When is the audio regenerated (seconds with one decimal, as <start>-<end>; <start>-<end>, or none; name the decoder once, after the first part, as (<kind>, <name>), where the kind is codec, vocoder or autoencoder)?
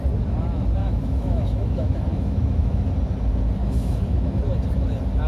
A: 0.8-2.9 (autoencoder, DAC-VAE); 3.6-4.4